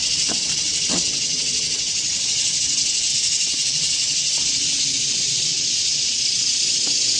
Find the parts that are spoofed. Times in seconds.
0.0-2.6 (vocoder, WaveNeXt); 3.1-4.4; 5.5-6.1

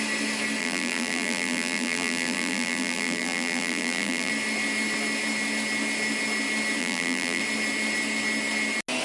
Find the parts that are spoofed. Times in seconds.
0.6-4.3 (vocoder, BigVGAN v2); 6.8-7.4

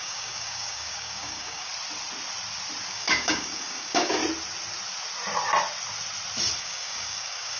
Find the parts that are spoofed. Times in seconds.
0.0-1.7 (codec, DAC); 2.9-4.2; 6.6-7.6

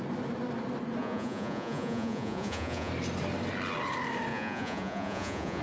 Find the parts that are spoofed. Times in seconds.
1.0-2.9 (vocoder, Vocos); 4.3-5.6

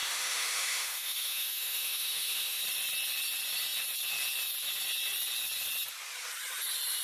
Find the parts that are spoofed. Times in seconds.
0.0-2.6 (autoencoder, DAC-VAE)

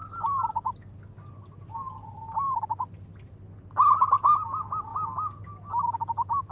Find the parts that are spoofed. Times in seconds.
none

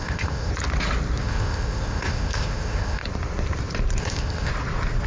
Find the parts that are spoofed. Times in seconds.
0.0-0.5 (codec, ZipCodec); 1.2-3.0; 4.0-4.5

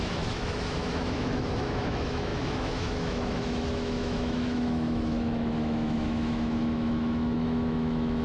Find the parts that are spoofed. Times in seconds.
0.0-8.2 (autoencoder, DAC-VAE)